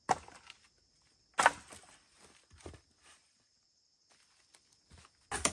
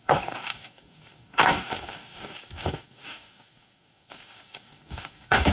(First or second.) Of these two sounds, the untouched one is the first